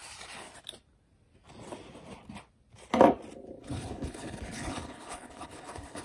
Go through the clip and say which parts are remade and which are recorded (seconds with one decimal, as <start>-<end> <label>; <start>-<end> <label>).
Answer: 0.0-3.6 recorded; 3.6-6.0 remade